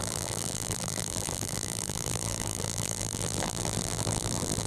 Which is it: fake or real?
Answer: fake